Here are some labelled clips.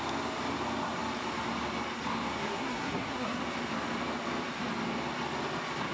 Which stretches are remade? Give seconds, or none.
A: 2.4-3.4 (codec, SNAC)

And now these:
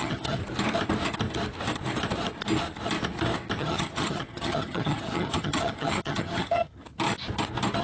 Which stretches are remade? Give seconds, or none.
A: 0.0-0.4 (vocoder, HiFi-GAN); 3.6-6.8